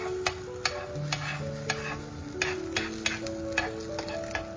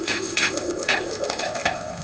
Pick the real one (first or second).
first